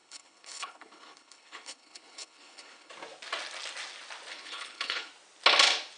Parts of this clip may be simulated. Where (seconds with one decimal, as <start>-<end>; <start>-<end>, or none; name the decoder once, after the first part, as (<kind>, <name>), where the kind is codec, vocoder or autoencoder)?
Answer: 0.0-2.9 (codec, HILCodec); 4.3-5.1